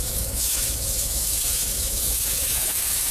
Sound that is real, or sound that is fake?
fake